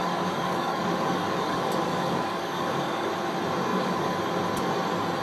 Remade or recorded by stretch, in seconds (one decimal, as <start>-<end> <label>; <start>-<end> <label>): 0.0-3.1 remade; 3.1-3.7 recorded; 3.7-4.2 remade; 4.2-5.2 recorded